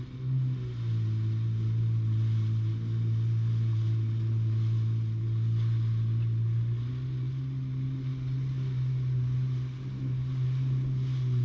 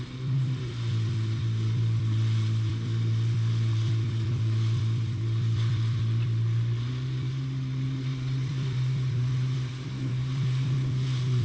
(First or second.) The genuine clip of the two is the first